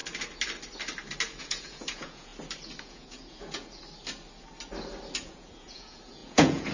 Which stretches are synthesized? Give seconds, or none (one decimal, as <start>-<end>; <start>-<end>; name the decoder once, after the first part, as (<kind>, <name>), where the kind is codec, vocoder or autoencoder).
1.4-2.3 (vocoder, Vocos); 2.8-3.8; 5.2-6.7